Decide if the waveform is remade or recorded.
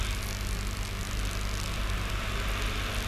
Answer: recorded